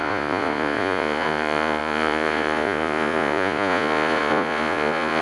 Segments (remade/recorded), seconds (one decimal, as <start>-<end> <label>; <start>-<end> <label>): 0.0-5.2 remade